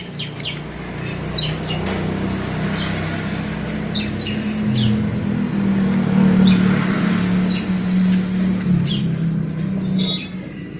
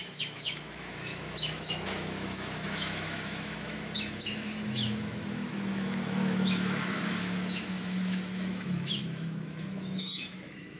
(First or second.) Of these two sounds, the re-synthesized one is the second